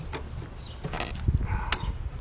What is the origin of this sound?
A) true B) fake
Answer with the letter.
A